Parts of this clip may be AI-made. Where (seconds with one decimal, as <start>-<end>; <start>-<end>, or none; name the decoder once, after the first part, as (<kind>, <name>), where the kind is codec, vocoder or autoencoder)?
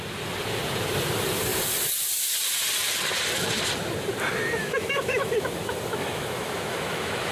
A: 4.6-7.3 (autoencoder, DAC-VAE)